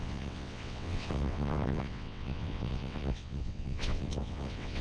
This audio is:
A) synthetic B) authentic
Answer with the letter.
A